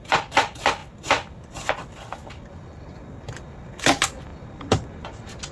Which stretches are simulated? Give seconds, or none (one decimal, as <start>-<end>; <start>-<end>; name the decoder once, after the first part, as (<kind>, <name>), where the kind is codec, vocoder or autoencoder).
none